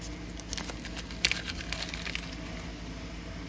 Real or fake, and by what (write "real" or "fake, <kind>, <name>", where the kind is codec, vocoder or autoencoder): real